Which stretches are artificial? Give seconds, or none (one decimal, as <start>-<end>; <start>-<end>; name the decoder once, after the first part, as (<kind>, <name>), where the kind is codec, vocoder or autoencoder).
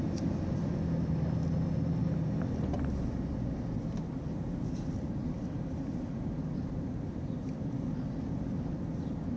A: 2.0-3.3 (vocoder, BigVGAN v2)